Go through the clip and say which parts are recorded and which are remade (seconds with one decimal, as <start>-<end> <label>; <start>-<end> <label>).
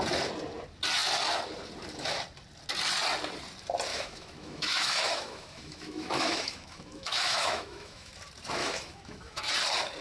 0.0-3.9 recorded; 3.9-8.1 remade; 8.1-8.6 recorded; 8.6-9.5 remade; 9.5-10.0 recorded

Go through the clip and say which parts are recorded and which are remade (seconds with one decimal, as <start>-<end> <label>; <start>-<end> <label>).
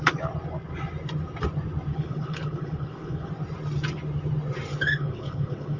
0.0-1.9 recorded; 1.9-3.3 remade; 3.3-4.7 recorded; 4.7-5.8 remade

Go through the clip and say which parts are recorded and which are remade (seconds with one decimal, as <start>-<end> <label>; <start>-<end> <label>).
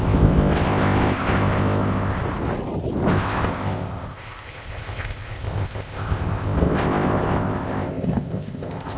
0.0-2.2 remade; 2.2-3.1 recorded; 3.1-9.0 remade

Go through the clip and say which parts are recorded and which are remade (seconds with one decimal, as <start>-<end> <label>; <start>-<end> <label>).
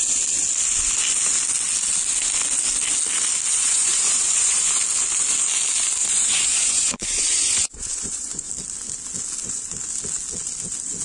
0.0-3.5 recorded; 3.5-4.7 remade; 4.7-6.0 recorded; 6.0-8.5 remade; 8.5-11.0 recorded